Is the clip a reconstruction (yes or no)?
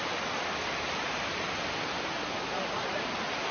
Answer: no